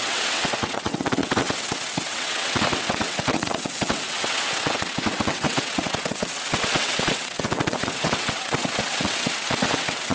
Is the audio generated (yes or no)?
yes